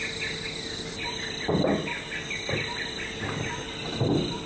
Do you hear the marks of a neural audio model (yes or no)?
no